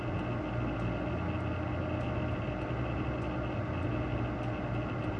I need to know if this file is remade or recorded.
recorded